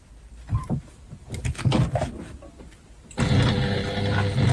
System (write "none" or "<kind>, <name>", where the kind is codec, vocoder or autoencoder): vocoder, BigVGAN v2